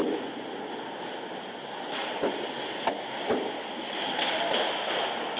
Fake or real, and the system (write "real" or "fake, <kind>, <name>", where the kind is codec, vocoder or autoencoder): real